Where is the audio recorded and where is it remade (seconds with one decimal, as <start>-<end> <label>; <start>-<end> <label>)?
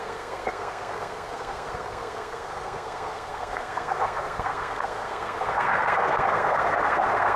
0.0-7.4 remade